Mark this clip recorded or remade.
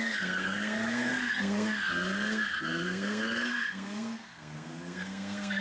remade